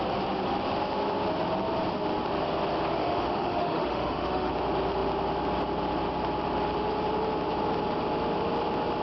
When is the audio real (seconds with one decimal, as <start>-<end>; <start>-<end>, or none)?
0.0-3.0; 4.5-9.0